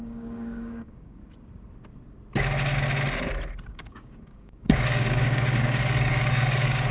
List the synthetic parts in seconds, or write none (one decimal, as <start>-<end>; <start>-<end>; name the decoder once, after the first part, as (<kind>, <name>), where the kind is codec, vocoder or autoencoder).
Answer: 0.0-1.2 (codec, DAC); 3.7-6.9